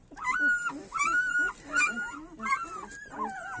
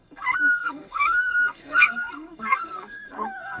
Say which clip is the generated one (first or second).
second